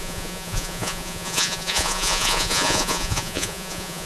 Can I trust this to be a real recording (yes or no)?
no